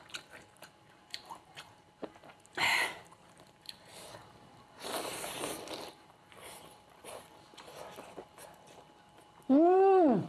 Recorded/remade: remade